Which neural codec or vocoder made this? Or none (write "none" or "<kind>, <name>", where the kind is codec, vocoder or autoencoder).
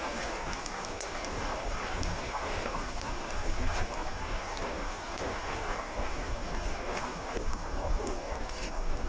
codec, DAC